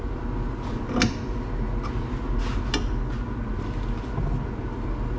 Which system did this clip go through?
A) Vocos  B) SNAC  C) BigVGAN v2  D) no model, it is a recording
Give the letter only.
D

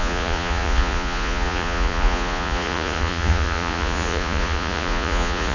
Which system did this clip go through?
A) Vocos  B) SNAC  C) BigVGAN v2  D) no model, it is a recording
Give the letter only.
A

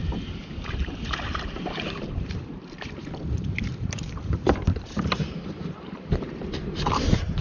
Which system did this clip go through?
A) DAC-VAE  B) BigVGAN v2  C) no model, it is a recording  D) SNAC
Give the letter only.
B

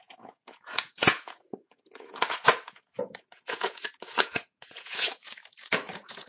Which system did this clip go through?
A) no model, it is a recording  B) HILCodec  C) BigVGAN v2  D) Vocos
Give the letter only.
D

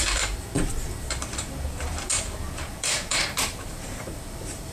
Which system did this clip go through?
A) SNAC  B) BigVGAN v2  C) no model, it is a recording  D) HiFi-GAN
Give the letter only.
B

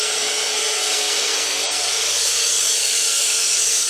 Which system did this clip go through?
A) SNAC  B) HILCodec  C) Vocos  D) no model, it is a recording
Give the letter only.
A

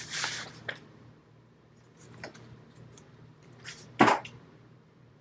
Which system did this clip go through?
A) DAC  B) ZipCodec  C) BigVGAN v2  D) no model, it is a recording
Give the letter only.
C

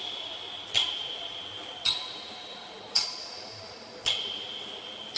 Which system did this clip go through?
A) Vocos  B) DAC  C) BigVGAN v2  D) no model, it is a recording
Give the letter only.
C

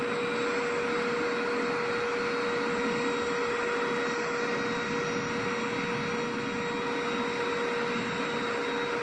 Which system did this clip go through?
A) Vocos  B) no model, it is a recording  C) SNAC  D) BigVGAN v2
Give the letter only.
B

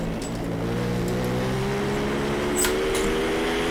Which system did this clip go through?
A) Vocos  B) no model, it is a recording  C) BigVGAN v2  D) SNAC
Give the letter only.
B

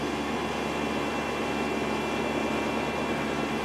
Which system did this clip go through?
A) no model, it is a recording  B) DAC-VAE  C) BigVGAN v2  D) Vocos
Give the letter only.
A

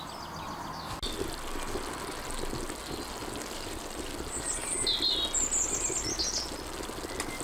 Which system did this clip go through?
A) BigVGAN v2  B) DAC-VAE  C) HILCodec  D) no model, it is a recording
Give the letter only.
D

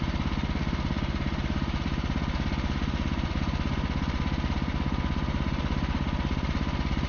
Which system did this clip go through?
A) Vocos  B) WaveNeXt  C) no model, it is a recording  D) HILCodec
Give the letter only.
C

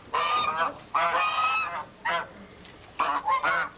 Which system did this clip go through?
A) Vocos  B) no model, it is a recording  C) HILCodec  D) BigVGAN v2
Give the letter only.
B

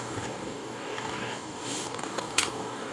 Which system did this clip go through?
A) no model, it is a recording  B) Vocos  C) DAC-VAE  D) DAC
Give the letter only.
D